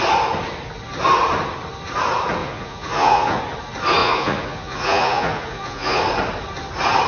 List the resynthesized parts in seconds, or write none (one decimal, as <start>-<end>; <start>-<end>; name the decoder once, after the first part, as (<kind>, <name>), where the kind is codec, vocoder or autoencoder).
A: 2.4-3.4 (vocoder, Vocos); 4.0-6.0